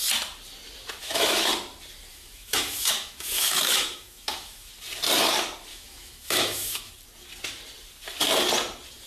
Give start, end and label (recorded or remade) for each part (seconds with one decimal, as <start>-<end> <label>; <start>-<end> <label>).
0.0-1.0 recorded; 1.0-1.5 remade; 1.5-2.1 recorded; 2.1-4.7 remade; 4.7-5.7 recorded; 5.7-6.9 remade; 6.9-9.1 recorded